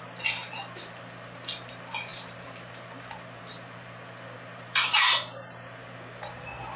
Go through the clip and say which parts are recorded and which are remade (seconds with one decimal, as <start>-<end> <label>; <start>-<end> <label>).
0.0-6.8 recorded